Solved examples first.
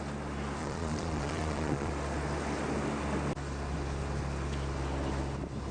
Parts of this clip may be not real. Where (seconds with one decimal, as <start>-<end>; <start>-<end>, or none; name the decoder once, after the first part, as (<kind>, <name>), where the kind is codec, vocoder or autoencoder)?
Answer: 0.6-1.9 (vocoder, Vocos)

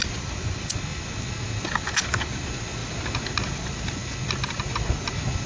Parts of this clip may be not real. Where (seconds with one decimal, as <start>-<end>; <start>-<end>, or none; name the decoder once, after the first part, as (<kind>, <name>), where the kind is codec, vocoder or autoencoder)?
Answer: none

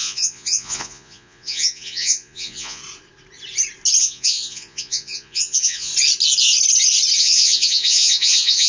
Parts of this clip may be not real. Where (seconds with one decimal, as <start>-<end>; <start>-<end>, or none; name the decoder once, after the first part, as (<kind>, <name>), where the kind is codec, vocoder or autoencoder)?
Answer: 0.0-2.8 (vocoder, Vocos); 4.0-5.9; 7.2-8.7